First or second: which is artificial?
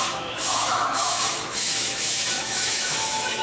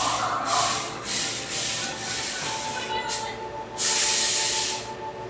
first